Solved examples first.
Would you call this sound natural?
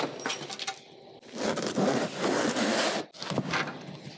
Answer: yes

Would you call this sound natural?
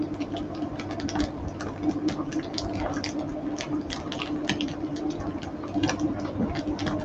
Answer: yes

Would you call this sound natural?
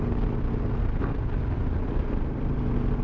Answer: yes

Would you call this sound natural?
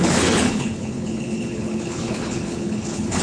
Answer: no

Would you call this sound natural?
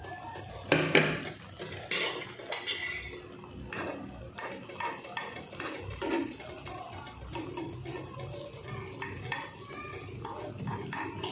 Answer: yes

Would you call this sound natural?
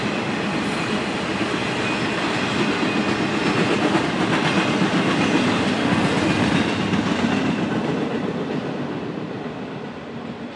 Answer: yes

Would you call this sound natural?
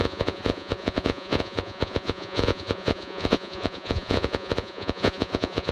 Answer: no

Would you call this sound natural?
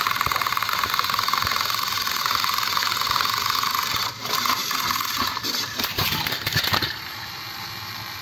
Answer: no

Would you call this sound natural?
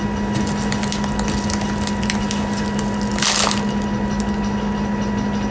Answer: yes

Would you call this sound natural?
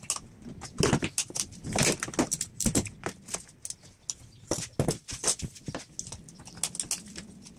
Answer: yes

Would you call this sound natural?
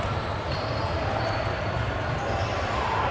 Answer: yes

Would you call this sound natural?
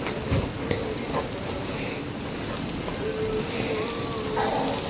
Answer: yes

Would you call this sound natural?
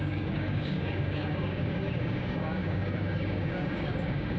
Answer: no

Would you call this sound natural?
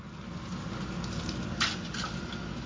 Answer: yes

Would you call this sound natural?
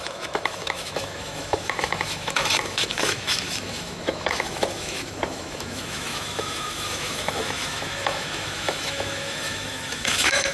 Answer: no